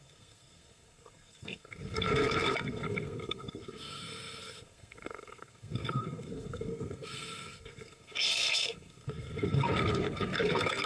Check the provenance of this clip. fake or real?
fake